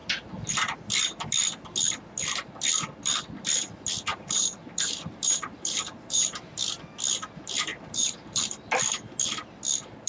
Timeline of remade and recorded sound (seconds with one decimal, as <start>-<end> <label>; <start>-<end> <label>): 0.0-4.1 recorded; 4.1-6.4 remade; 6.4-7.7 recorded; 7.7-8.4 remade; 8.4-10.1 recorded